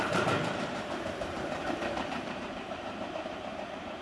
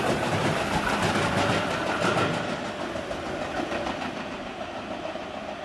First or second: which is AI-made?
first